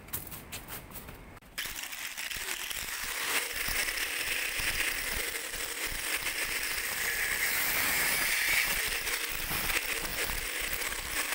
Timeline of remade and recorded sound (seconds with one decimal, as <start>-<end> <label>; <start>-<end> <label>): 0.0-11.3 remade